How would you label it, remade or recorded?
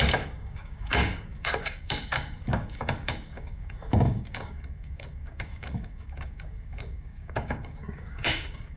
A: remade